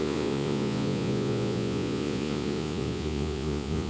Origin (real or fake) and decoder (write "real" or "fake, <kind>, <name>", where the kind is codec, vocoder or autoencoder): fake, vocoder, Vocos